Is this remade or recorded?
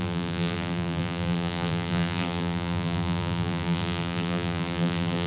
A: remade